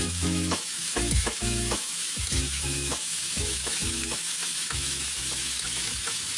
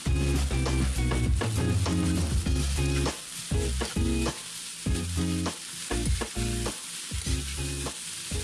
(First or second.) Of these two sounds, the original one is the second